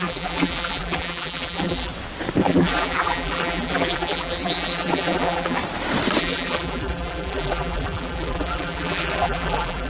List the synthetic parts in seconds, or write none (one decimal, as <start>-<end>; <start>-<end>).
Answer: 0.0-1.9; 2.4-5.6; 6.2-9.9